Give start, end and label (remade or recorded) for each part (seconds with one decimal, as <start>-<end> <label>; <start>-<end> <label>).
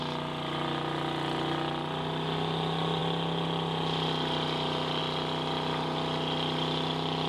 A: 0.0-7.3 recorded